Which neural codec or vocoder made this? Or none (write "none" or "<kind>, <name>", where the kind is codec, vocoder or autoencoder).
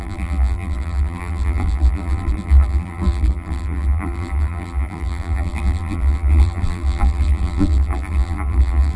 vocoder, BigVGAN v2